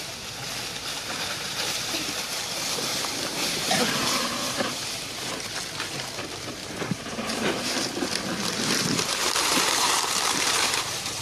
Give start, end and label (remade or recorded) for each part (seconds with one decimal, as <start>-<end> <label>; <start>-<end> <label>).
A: 0.0-0.7 recorded; 0.7-2.3 remade; 2.3-2.9 recorded; 2.9-5.3 remade; 5.3-6.6 recorded; 6.6-7.7 remade; 7.7-9.2 recorded; 9.2-11.2 remade